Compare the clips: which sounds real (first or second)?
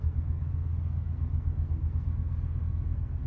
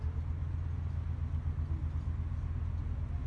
second